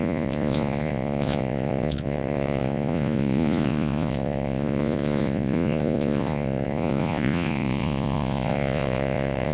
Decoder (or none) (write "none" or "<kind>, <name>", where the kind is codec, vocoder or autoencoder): vocoder, Vocos